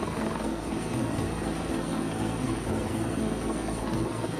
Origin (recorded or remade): remade